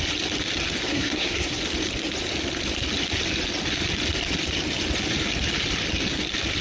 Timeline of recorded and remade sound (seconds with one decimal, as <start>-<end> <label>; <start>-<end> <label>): 0.0-0.9 recorded; 0.9-1.6 remade; 1.6-6.6 recorded

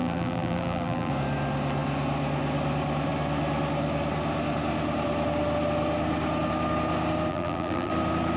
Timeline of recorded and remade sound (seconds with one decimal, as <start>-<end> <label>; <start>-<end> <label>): 0.0-1.1 remade; 1.1-7.3 recorded; 7.3-7.9 remade; 7.9-8.4 recorded

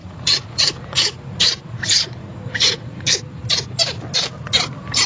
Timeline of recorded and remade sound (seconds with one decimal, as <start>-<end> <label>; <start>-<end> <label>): 0.0-3.1 remade; 3.1-5.1 recorded

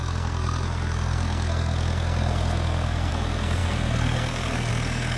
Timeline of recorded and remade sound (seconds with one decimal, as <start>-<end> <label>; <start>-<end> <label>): 0.0-5.2 remade